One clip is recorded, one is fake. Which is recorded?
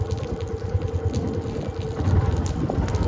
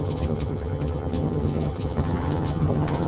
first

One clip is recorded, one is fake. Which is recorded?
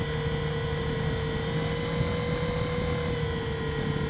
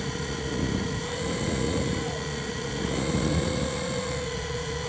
first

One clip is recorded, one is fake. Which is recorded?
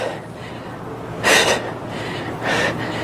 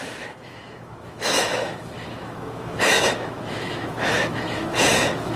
first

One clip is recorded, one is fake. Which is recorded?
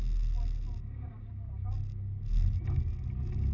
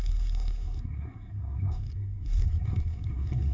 first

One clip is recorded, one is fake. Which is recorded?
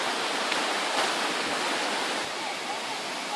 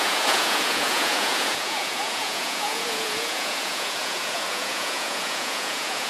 first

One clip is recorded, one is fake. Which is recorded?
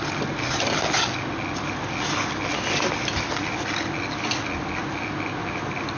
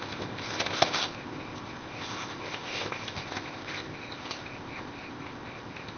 first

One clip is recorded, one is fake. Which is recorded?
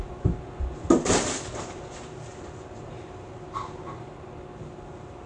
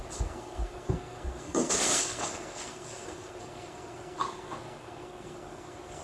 first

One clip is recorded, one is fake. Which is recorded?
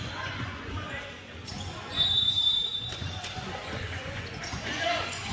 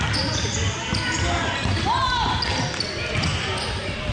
second